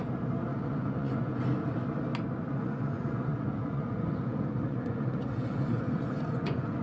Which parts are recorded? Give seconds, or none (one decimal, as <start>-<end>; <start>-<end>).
0.0-0.5; 1.4-2.5